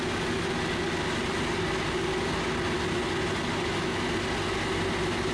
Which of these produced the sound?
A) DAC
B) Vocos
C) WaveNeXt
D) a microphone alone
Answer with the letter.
D